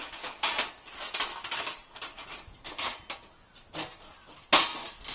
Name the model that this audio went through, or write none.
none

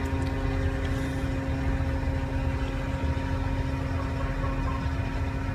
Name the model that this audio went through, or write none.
none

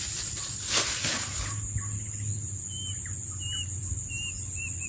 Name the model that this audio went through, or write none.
none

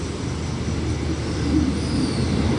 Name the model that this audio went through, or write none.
none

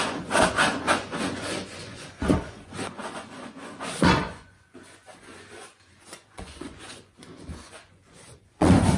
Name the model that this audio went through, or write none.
vocoder, Vocos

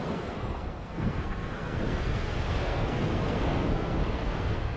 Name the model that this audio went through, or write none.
codec, SNAC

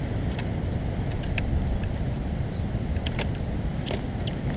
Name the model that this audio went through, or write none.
none